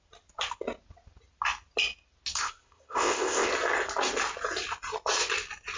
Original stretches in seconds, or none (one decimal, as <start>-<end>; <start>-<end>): 0.0-2.4; 3.5-5.8